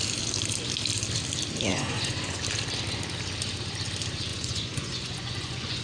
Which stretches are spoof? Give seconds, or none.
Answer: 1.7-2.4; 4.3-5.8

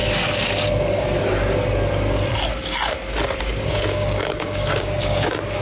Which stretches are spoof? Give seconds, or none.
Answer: 3.4-5.6

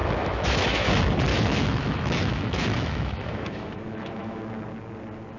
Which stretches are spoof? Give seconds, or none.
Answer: 0.0-0.9; 1.3-4.4

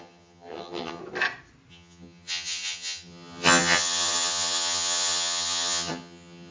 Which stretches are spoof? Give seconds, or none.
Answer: 0.0-1.0; 1.7-6.5

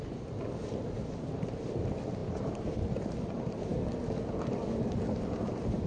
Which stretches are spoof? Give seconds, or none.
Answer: 2.2-2.8

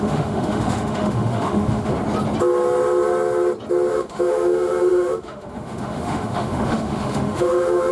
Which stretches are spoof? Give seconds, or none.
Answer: 0.0-1.9; 3.9-7.9

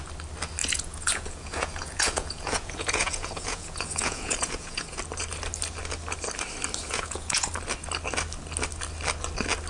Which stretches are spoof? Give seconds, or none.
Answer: 0.6-5.0; 6.8-7.5